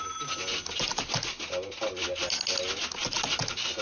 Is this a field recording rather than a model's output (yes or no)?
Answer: yes